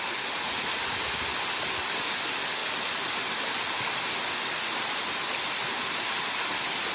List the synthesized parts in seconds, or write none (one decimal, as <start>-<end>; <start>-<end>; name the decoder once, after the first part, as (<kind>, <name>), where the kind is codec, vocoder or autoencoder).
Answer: none